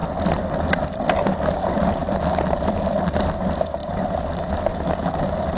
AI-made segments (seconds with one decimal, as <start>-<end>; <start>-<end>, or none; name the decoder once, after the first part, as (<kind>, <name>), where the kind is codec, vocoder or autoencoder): 1.5-2.0 (vocoder, BigVGAN v2); 2.6-5.6